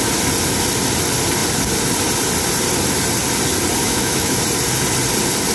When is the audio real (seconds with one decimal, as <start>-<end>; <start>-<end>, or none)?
0.0-3.8; 4.4-5.5